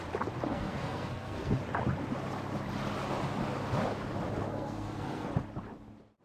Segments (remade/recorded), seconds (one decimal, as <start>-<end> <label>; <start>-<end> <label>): 0.0-0.5 recorded; 0.5-1.6 remade; 1.6-4.5 recorded; 4.5-5.3 remade; 5.3-6.2 recorded